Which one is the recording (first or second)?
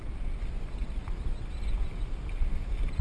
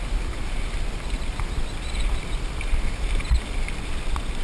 first